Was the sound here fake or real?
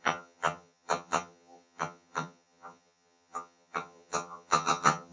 fake